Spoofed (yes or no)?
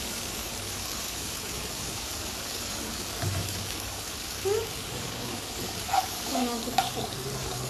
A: yes